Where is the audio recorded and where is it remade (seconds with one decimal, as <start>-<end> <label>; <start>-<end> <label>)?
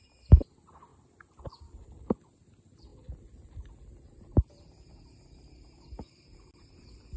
0.0-7.2 recorded